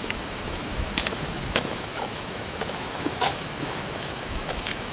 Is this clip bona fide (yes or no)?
no